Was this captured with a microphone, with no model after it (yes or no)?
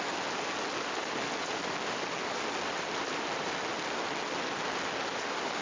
yes